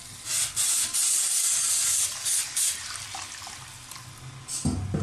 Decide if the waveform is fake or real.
real